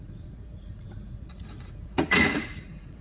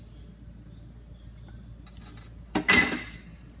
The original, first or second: second